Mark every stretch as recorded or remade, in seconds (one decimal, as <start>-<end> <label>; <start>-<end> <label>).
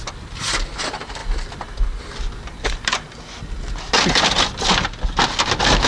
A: 0.0-5.9 recorded